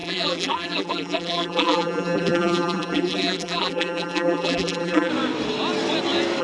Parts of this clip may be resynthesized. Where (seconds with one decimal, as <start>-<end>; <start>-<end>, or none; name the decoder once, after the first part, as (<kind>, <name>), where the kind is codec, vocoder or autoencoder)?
0.0-5.1 (vocoder, BigVGAN v2)